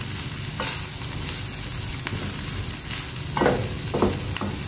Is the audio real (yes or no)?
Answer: yes